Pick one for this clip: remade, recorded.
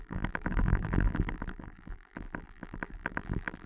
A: remade